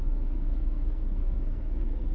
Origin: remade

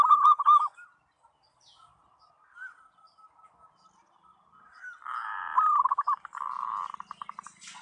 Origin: recorded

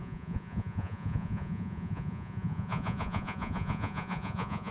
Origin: remade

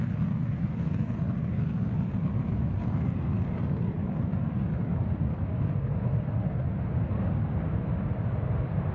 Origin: recorded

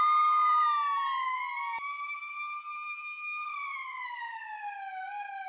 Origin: recorded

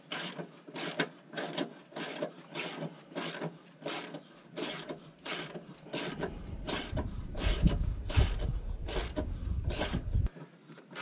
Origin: recorded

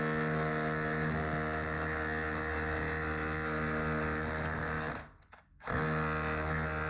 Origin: recorded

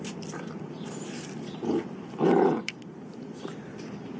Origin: remade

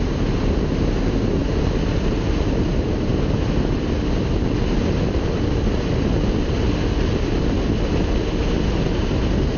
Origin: recorded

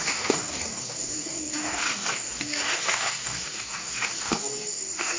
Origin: remade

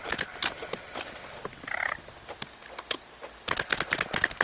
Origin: recorded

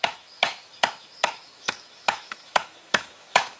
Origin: remade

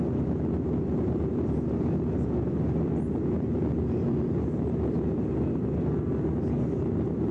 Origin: recorded